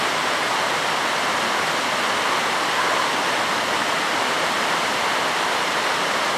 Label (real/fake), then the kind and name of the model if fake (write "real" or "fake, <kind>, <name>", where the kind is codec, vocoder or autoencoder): real